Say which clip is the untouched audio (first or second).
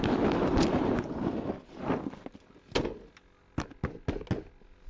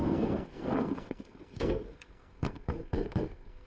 first